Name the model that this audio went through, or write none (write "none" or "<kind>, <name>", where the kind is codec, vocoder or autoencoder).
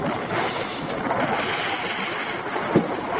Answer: none